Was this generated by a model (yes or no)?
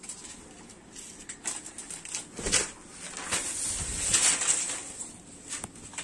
no